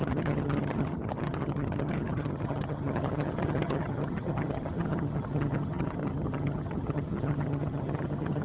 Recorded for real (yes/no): no